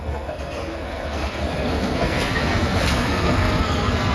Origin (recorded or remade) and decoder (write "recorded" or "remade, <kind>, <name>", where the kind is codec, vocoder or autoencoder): remade, codec, SNAC